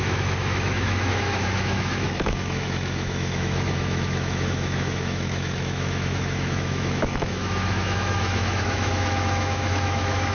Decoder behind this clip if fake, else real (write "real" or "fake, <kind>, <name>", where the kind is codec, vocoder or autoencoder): fake, autoencoder, DAC-VAE